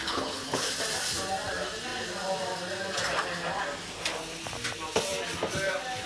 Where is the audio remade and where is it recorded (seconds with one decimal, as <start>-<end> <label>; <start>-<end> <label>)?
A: 0.0-0.7 remade; 0.7-6.1 recorded